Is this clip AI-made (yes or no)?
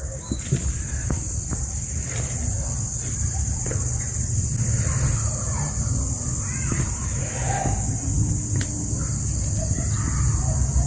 no